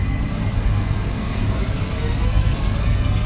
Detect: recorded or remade remade